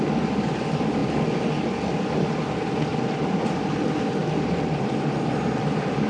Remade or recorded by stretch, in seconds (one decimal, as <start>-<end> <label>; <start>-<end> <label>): 0.0-6.1 recorded